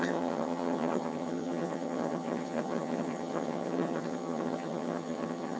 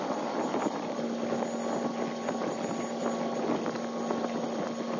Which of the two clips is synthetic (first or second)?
first